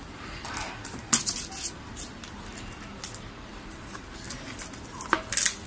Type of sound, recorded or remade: recorded